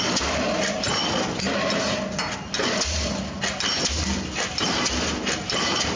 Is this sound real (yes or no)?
yes